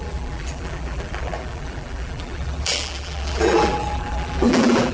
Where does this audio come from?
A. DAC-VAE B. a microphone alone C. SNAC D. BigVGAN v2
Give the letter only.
D